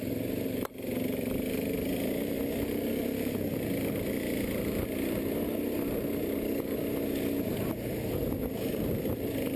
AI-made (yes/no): no